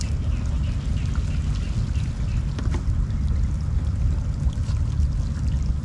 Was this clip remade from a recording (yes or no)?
no